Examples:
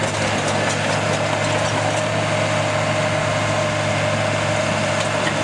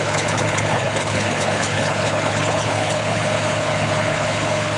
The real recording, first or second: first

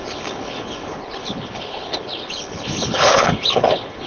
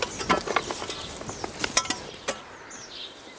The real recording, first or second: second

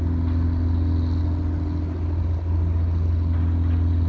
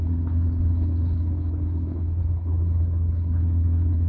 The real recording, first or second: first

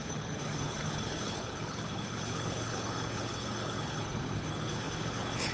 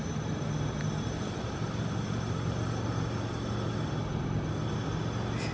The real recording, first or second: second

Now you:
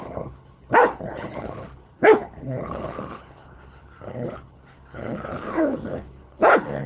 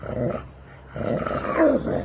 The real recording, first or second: second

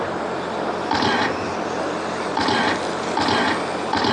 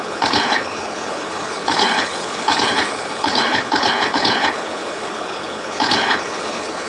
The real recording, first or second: first